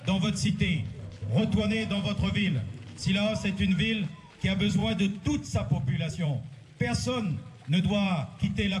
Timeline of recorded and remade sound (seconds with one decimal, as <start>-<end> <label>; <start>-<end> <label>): 0.0-2.6 remade; 2.6-4.1 recorded; 4.1-8.8 remade